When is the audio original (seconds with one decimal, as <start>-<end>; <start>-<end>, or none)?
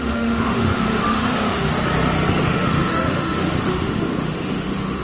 1.7-2.4